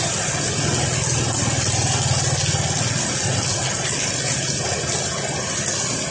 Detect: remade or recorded recorded